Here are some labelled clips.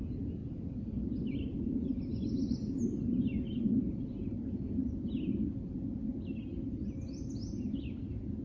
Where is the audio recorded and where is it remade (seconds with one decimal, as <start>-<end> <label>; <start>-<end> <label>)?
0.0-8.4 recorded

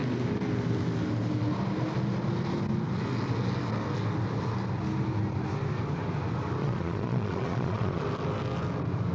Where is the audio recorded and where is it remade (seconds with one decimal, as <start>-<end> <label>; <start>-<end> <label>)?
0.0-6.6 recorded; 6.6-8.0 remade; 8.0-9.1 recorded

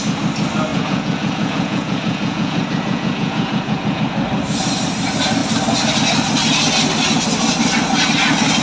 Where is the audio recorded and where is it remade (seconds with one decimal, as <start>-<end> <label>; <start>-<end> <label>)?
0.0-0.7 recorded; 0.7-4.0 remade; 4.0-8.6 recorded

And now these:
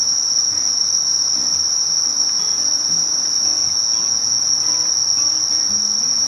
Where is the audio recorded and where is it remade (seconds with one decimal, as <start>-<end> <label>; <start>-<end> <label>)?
0.0-3.6 recorded; 3.6-4.4 remade; 4.4-6.3 recorded

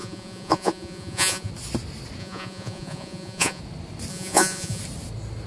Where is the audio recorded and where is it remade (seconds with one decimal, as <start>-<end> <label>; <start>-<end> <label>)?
0.0-1.5 remade; 1.5-2.2 recorded; 2.2-3.6 remade; 3.6-4.1 recorded; 4.1-4.8 remade; 4.8-5.5 recorded

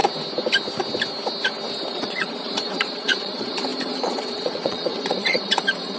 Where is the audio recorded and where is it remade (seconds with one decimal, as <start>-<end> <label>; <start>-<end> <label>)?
0.0-1.9 recorded; 1.9-6.0 remade